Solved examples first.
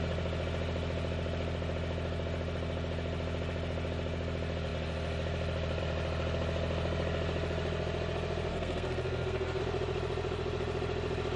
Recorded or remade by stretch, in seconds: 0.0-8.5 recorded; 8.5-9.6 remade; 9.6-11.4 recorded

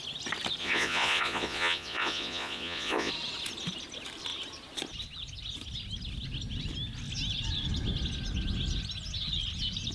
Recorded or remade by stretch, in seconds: 0.0-0.6 recorded; 0.6-3.1 remade; 3.1-9.9 recorded

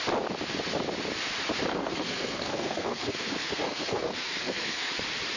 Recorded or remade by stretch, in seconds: 0.0-1.7 recorded; 1.7-4.9 remade; 4.9-5.4 recorded

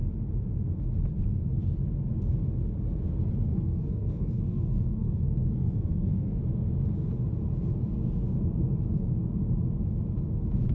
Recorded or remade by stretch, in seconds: 0.0-3.5 recorded; 3.5-6.4 remade; 6.4-10.7 recorded

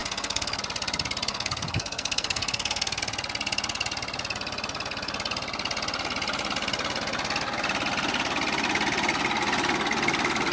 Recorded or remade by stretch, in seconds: 0.0-0.6 remade; 0.6-1.3 recorded; 1.3-3.0 remade; 3.0-10.5 recorded

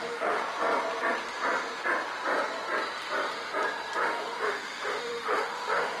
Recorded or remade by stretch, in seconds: 0.0-0.4 remade; 0.4-4.0 recorded; 4.0-6.0 remade

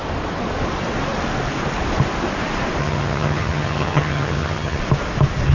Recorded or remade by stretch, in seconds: 0.0-2.8 recorded; 2.8-4.8 remade; 4.8-5.5 recorded